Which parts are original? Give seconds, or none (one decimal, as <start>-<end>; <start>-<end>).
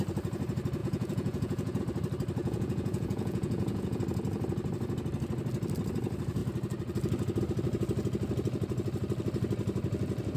0.0-0.8; 1.8-2.4; 4.0-10.4